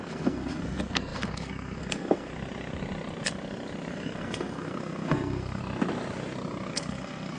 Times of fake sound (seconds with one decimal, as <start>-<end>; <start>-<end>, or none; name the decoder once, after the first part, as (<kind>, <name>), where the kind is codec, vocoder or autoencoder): 0.0-2.3 (codec, SNAC); 3.9-5.6; 6.7-7.4